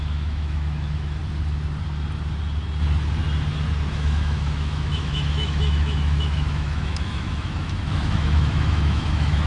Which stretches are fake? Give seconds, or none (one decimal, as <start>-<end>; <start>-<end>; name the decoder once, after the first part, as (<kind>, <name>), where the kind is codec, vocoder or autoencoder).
0.0-1.2 (autoencoder, DAC-VAE); 3.9-9.5